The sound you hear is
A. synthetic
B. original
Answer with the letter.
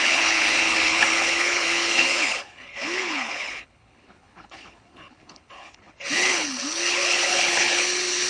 A